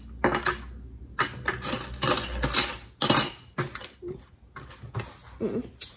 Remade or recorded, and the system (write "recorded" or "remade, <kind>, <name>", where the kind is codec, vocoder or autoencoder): recorded